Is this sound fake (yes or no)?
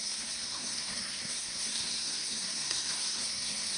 yes